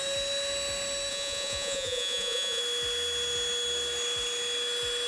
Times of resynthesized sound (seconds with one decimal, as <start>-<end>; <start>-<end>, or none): 1.1-2.6